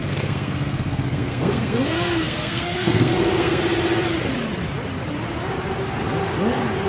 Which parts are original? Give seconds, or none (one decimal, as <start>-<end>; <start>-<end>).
3.6-6.9